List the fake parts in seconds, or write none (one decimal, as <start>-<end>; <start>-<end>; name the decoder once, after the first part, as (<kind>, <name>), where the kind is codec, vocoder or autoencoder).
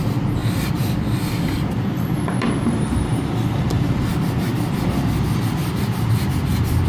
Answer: 0.4-3.3 (vocoder, BigVGAN v2); 4.1-4.9; 5.6-6.1